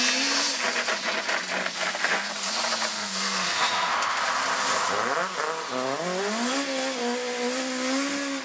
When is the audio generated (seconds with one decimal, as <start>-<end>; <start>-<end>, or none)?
1.6-2.3; 2.9-4.2